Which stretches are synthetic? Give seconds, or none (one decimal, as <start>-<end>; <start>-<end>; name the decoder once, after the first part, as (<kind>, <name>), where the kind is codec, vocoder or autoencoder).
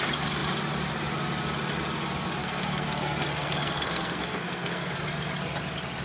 2.4-5.0 (codec, SNAC)